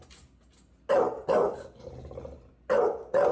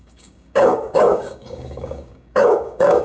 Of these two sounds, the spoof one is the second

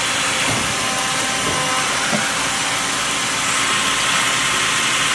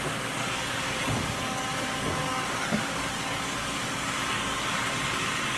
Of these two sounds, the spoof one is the second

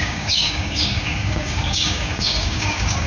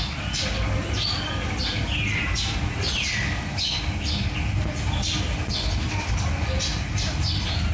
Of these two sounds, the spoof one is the first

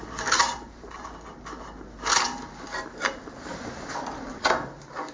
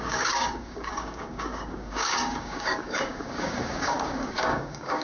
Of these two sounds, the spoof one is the second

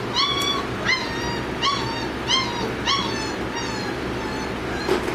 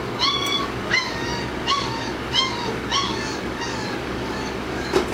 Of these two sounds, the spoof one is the second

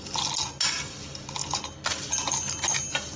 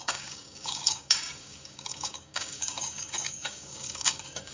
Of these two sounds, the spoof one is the second